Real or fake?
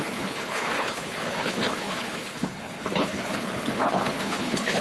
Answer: fake